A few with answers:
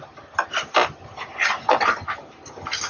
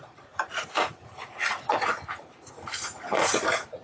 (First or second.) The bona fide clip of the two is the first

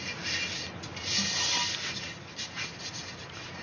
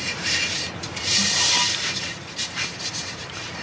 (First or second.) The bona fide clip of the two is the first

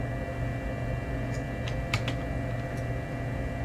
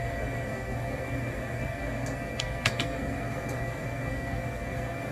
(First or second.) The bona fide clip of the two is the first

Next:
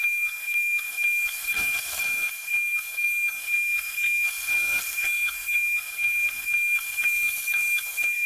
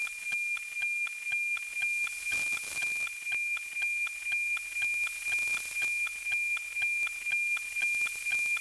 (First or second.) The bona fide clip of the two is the second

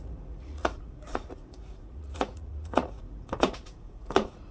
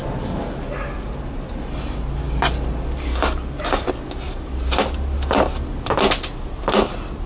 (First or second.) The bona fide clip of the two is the second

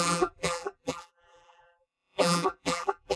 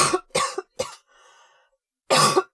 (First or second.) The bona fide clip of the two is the second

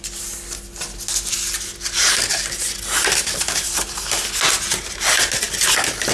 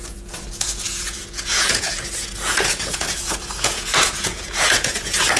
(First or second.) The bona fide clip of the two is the first